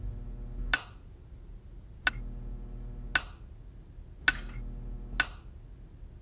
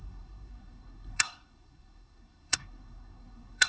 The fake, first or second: second